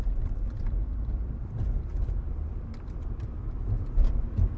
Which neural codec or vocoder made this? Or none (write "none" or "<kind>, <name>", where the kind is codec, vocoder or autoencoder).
vocoder, BigVGAN v2